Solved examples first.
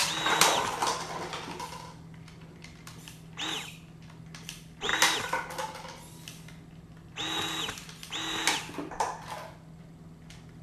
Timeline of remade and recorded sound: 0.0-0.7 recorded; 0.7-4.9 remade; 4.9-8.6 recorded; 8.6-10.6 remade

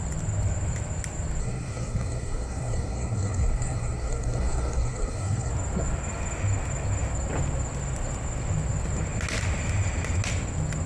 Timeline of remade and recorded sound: 0.0-1.4 recorded; 1.4-5.5 remade; 5.5-10.9 recorded

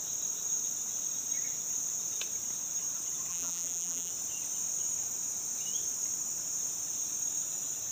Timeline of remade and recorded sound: 0.0-3.3 recorded; 3.3-4.1 remade; 4.1-7.9 recorded

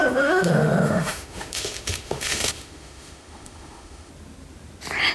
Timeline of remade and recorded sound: 0.0-4.1 remade; 4.1-5.1 recorded

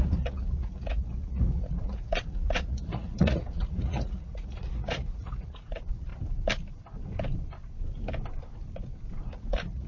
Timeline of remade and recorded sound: 0.0-6.1 remade; 6.1-9.3 recorded; 9.3-9.9 remade

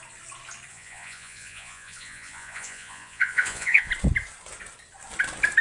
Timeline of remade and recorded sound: 0.0-0.7 recorded; 0.7-3.9 remade; 3.9-5.6 recorded

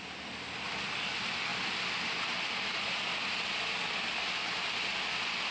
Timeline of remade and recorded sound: 0.0-5.5 recorded